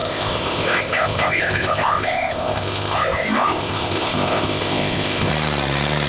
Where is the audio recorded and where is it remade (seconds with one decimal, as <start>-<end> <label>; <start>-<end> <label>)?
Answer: 0.0-5.3 remade; 5.3-6.1 recorded